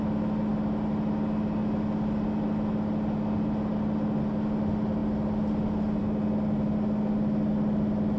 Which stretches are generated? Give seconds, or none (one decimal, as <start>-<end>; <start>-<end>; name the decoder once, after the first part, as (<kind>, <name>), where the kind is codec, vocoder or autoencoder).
none